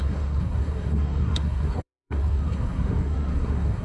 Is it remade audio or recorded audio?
remade